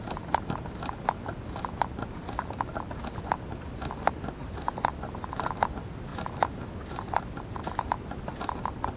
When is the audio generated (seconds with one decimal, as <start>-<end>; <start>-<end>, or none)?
none